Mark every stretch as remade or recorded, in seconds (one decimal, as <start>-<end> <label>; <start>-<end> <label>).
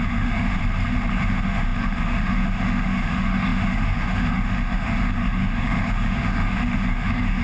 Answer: 0.0-0.6 remade; 0.6-1.1 recorded; 1.1-7.4 remade